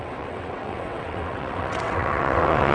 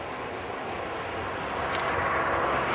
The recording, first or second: second